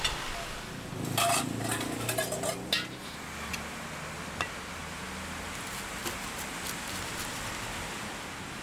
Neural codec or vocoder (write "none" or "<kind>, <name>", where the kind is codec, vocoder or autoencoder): none